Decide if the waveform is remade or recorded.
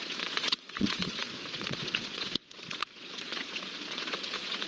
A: remade